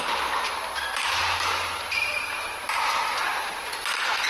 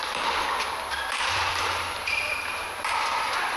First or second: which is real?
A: first